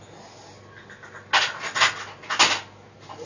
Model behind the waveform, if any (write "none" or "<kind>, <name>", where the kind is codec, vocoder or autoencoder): none